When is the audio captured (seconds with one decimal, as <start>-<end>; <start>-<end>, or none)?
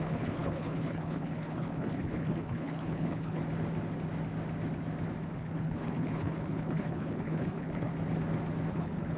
3.4-5.3; 7.9-8.7